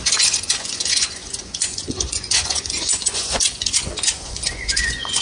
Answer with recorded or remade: remade